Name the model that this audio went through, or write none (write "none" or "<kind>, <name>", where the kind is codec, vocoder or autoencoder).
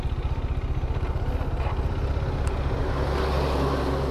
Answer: none